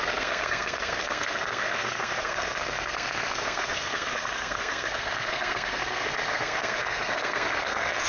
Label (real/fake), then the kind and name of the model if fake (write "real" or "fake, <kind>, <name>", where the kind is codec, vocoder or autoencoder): fake, codec, SNAC